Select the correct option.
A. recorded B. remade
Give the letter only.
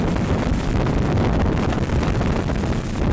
A